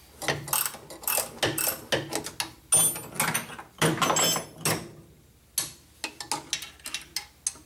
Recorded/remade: recorded